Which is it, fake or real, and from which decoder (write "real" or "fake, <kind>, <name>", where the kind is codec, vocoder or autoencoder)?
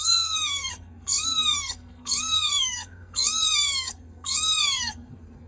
fake, codec, SNAC